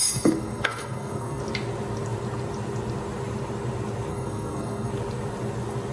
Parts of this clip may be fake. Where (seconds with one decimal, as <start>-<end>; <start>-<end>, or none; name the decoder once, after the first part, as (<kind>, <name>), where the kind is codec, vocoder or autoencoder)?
0.0-1.4 (codec, SNAC); 4.1-4.9